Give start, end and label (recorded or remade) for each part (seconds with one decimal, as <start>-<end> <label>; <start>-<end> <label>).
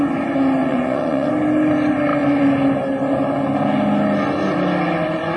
0.0-0.6 recorded; 0.6-1.3 remade; 1.3-5.4 recorded